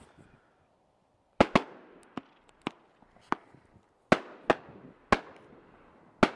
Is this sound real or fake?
real